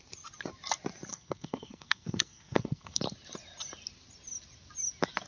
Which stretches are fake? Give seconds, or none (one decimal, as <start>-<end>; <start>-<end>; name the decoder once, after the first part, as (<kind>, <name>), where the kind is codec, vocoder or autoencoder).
1.1-3.0 (codec, SNAC)